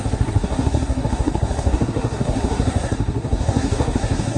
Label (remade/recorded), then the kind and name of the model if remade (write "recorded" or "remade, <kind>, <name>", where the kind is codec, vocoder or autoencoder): remade, codec, SNAC